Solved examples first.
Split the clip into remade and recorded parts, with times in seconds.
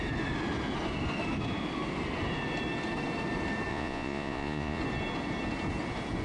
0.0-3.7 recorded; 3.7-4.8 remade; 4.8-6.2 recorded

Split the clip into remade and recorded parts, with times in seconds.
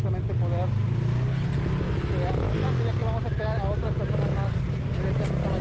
0.0-5.6 recorded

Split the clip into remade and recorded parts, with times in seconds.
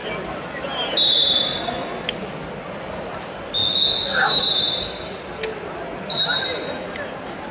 0.0-7.5 recorded